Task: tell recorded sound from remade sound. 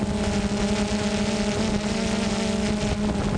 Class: recorded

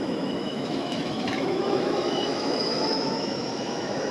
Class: remade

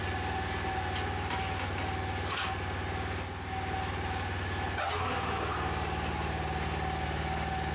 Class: recorded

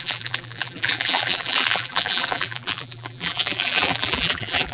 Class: remade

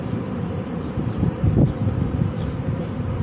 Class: remade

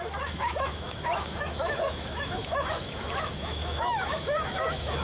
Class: remade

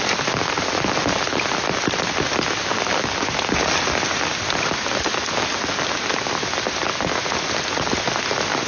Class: recorded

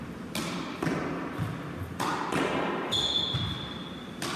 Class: recorded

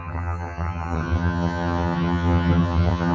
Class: remade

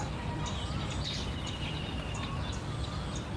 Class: recorded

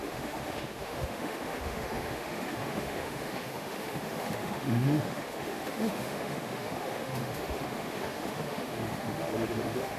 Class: remade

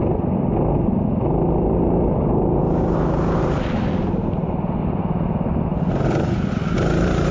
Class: recorded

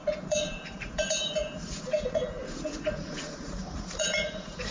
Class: remade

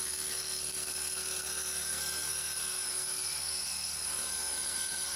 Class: remade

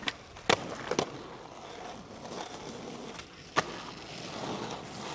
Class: recorded